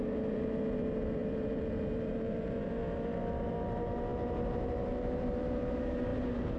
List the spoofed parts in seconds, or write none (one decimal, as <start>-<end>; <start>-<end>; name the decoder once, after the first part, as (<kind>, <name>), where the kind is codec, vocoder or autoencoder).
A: 0.0-6.6 (vocoder, BigVGAN v2)